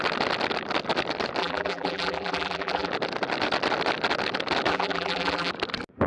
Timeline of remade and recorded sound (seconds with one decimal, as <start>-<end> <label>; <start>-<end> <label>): 0.0-1.4 recorded; 1.4-2.9 remade; 2.9-4.7 recorded; 4.7-5.5 remade; 5.5-6.1 recorded

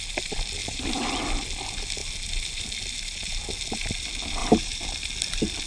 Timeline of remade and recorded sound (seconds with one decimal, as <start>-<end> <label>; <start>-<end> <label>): 0.0-0.6 recorded; 0.6-1.1 remade; 1.1-4.4 recorded; 4.4-4.9 remade; 4.9-5.7 recorded

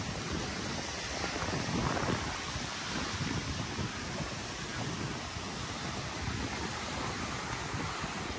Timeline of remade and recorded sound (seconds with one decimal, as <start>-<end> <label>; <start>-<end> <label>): 0.0-8.4 recorded

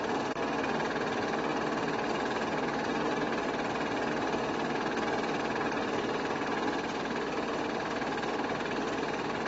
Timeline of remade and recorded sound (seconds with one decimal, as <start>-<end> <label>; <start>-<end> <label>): 0.0-9.5 recorded

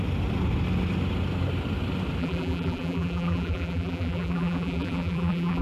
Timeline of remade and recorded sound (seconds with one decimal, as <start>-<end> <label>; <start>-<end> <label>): 0.0-2.2 recorded; 2.2-5.6 remade

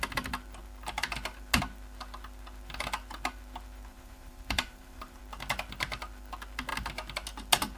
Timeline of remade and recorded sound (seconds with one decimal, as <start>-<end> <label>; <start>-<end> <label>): 0.0-3.9 recorded; 3.9-5.2 remade; 5.2-7.8 recorded